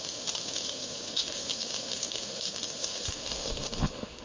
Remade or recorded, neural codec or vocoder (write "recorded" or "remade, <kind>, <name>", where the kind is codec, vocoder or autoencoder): remade, autoencoder, DAC-VAE